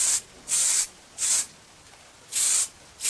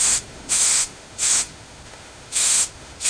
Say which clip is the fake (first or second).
second